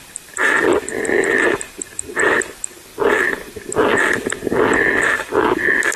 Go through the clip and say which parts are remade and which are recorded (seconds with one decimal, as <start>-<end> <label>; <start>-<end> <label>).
0.0-2.9 recorded; 2.9-3.5 remade; 3.5-6.0 recorded